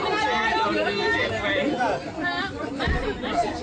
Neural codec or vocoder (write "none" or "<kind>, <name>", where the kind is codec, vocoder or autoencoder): none